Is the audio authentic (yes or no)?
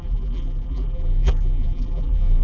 no